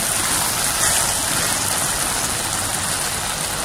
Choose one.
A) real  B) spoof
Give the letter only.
A